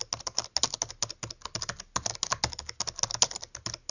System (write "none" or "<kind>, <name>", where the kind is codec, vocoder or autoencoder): none